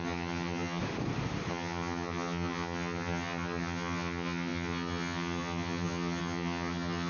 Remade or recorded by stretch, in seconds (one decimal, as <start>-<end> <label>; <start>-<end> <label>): 0.0-0.8 remade; 0.8-1.5 recorded; 1.5-7.1 remade